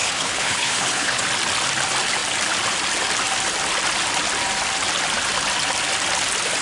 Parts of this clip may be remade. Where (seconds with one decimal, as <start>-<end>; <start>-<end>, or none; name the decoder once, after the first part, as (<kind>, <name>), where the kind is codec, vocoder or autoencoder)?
0.0-1.2 (codec, HILCodec)